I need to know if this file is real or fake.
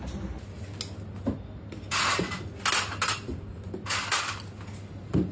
real